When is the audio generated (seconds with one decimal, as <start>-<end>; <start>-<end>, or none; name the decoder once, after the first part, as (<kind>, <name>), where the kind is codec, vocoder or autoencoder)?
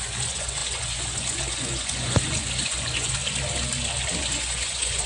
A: 0.0-3.2 (vocoder, Vocos); 4.2-5.1